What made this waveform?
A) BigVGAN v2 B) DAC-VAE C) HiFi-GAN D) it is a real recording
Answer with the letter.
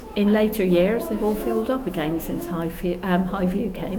B